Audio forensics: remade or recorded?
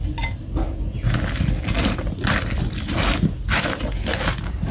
recorded